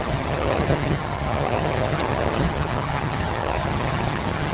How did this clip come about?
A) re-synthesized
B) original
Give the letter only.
A